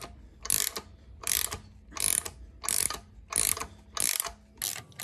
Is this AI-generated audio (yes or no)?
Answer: no